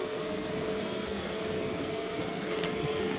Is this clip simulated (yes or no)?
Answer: yes